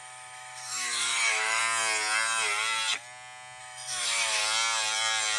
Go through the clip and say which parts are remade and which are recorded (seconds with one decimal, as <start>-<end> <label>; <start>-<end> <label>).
0.0-1.6 remade; 1.6-3.6 recorded; 3.6-4.4 remade; 4.4-5.4 recorded